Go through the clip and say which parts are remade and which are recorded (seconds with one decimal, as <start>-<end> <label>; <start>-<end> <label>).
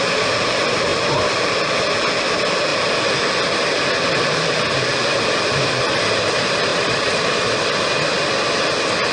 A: 0.0-9.1 recorded